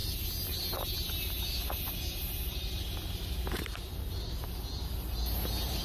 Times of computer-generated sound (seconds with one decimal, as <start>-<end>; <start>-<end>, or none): none